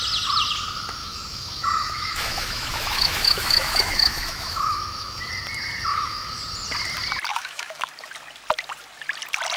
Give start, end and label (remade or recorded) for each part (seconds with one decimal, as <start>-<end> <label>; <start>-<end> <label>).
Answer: 0.0-1.0 recorded; 1.0-5.3 remade; 5.3-5.9 recorded; 5.9-6.4 remade; 6.4-7.3 recorded; 7.3-7.9 remade; 7.9-9.6 recorded